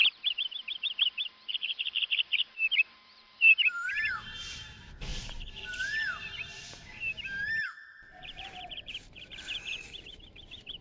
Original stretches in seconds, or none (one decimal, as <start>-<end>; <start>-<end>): none